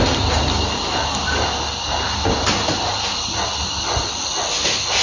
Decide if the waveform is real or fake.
real